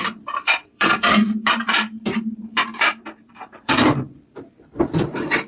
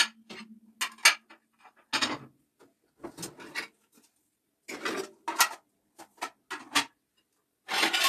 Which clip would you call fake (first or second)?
first